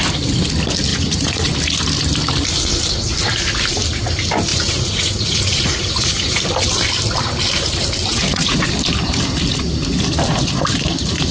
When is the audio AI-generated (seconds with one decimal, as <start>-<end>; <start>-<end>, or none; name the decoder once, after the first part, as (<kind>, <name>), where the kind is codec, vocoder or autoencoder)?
0.9-1.5 (vocoder, Vocos); 4.5-6.4; 8.1-8.7